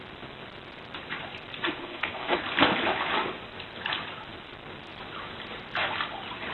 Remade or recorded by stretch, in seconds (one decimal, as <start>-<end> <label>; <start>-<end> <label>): 0.0-1.8 recorded; 1.8-2.4 remade; 2.4-6.5 recorded